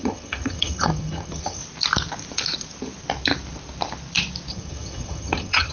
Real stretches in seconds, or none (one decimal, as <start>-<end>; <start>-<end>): 1.6-4.5